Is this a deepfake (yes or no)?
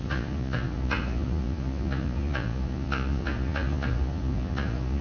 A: yes